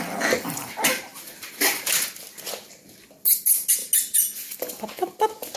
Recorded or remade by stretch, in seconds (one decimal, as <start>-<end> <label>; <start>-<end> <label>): 0.0-1.1 recorded; 1.1-2.7 remade; 2.7-5.6 recorded